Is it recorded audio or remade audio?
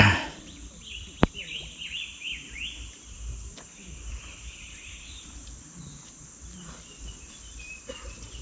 remade